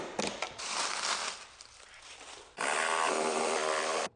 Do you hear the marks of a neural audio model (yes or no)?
yes